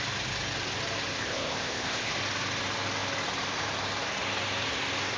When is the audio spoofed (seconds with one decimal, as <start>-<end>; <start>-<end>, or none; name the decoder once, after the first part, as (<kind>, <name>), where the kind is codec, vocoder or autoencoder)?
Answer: 1.2-2.1 (codec, ZipCodec)